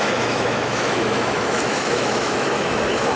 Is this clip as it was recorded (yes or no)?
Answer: no